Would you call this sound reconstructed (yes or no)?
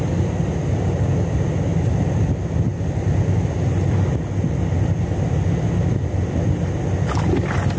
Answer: no